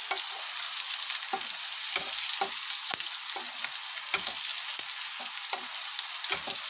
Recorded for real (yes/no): yes